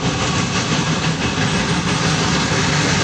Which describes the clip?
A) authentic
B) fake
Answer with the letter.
A